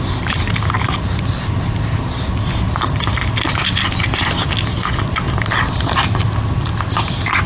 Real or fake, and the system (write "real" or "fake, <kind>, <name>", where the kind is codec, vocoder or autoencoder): real